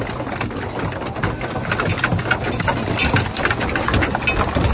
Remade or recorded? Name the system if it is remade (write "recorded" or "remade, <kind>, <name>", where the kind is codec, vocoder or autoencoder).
recorded